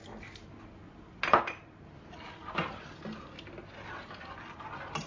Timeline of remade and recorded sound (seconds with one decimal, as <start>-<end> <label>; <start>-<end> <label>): 0.0-5.1 recorded